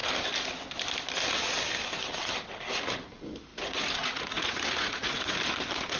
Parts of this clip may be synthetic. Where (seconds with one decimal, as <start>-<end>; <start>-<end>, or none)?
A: 3.5-5.4